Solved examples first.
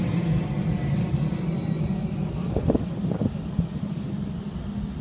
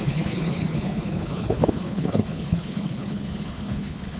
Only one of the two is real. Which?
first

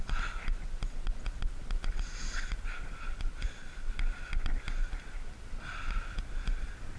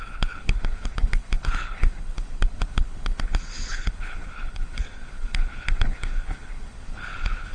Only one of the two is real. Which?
first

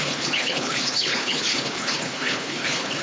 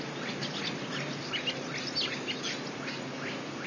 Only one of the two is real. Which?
second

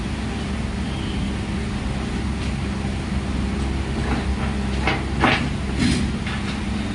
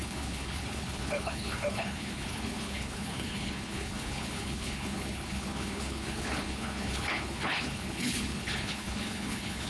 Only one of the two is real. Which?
first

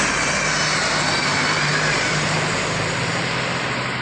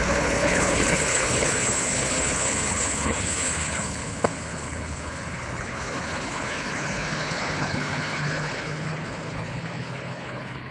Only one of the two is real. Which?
first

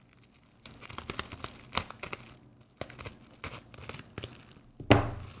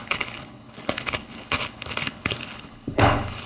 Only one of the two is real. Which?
first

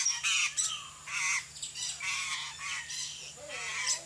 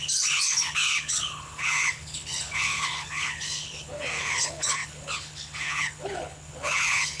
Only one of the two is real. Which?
first